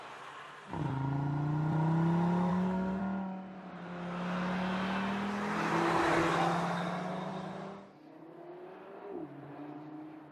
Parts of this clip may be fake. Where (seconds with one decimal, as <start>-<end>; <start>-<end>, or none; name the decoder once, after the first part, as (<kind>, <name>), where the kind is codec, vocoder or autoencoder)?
2.5-3.0 (codec, SNAC)